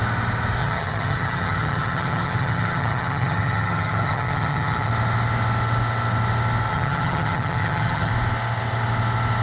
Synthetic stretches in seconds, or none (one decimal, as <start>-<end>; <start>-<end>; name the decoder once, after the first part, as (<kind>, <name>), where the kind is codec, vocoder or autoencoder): 0.6-4.9 (vocoder, HiFi-GAN); 6.7-8.1